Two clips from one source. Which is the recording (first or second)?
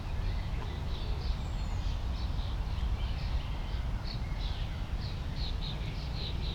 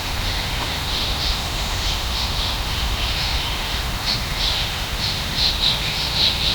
first